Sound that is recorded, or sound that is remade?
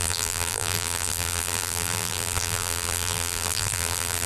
remade